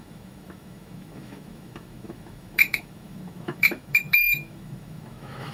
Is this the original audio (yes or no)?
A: no